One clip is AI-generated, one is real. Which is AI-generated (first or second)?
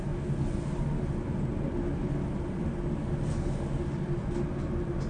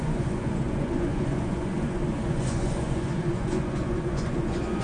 second